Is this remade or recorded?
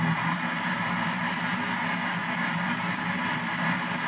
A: recorded